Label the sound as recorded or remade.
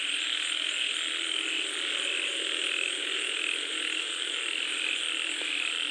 recorded